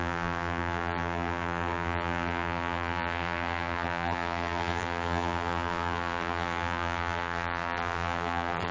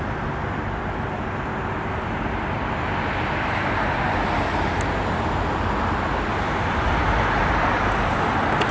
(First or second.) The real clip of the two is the second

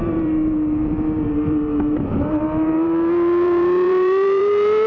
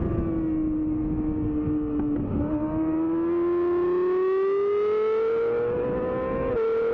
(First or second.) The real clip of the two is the second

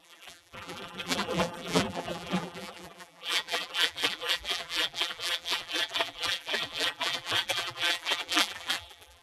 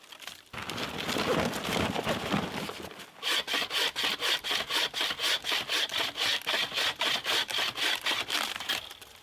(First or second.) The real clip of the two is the second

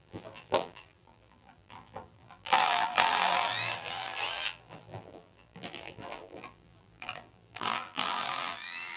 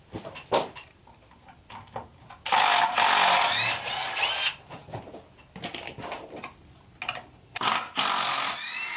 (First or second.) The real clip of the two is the second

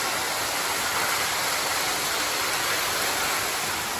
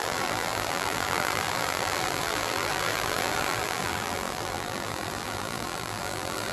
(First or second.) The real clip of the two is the first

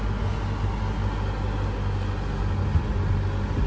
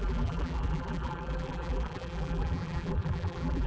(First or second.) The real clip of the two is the first